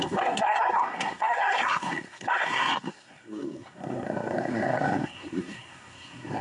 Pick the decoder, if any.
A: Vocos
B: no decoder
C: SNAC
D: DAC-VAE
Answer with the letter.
C